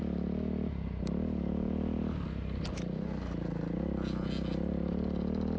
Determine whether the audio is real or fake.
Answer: real